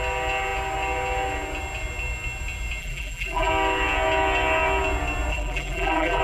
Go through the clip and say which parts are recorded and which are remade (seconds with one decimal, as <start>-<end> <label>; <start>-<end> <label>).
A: 0.0-2.8 recorded; 2.8-3.5 remade; 3.5-5.3 recorded; 5.3-6.2 remade